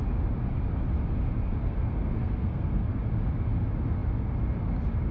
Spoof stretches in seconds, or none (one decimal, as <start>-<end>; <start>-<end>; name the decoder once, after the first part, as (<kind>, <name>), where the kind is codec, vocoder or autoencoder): 1.6-3.0 (codec, SNAC)